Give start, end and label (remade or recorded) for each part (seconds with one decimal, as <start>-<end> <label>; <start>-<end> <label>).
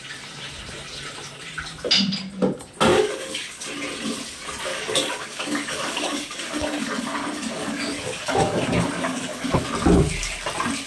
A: 0.0-2.9 recorded; 2.9-3.6 remade; 3.6-4.7 recorded; 4.7-9.6 remade; 9.6-10.9 recorded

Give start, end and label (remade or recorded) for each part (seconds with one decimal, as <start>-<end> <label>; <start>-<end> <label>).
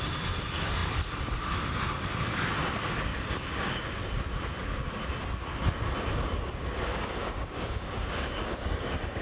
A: 0.0-3.1 recorded; 3.1-3.8 remade; 3.8-6.9 recorded; 6.9-9.2 remade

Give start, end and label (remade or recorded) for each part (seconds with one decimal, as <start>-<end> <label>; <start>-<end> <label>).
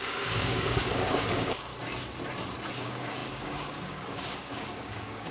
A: 0.0-1.7 remade; 1.7-2.7 recorded; 2.7-5.3 remade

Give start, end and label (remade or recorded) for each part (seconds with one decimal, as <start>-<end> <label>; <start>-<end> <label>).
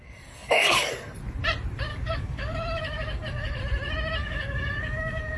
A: 0.0-0.4 recorded; 0.4-0.9 remade; 0.9-1.9 recorded; 1.9-3.6 remade; 3.6-4.2 recorded; 4.2-5.4 remade